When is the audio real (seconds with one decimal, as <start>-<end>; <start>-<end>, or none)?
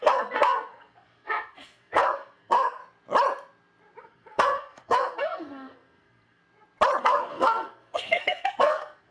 2.8-4.0; 6.4-7.0